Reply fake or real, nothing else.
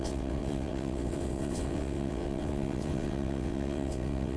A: fake